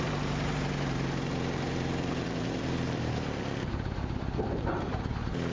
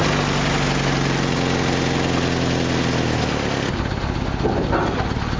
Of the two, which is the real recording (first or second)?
second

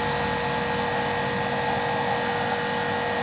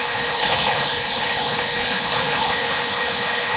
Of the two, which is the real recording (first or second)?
first